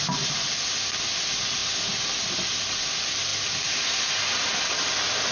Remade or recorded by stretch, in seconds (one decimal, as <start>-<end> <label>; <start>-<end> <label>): 0.0-5.3 recorded